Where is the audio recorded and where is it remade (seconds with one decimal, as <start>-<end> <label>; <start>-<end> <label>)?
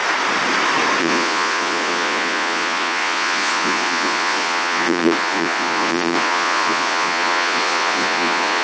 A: 0.0-1.0 recorded; 1.0-8.6 remade